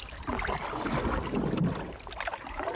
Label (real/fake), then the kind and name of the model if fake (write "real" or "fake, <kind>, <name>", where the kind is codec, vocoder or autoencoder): real